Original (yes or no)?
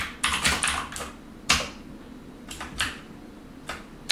no